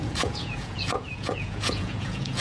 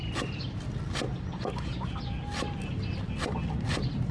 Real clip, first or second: second